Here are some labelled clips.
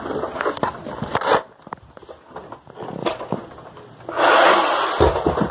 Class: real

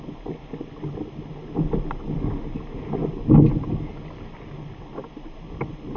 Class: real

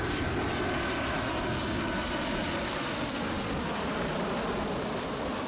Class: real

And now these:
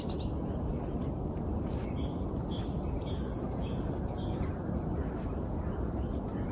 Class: real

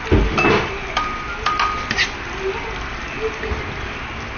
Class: real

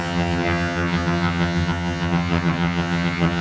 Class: fake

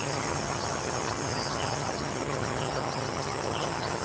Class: fake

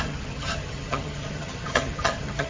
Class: fake